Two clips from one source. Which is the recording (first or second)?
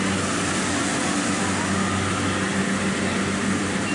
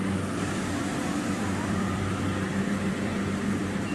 first